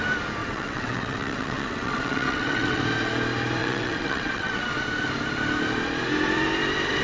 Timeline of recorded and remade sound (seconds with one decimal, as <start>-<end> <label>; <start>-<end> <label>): 0.0-0.4 recorded; 0.4-2.8 remade; 2.8-3.6 recorded; 3.6-4.6 remade; 4.6-7.0 recorded